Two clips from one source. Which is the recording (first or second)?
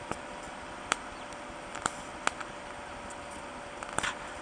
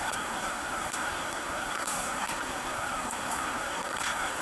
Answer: first